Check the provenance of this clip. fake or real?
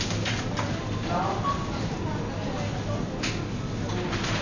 real